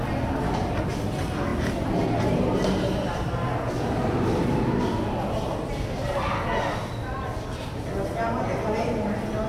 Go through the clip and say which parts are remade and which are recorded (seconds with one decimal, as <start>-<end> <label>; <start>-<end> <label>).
0.0-9.5 recorded